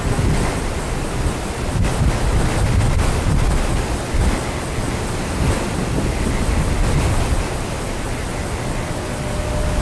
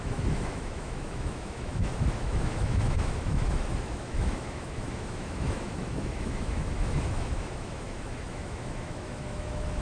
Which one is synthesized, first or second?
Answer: second